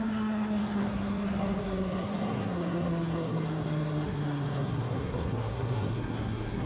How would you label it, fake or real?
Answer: fake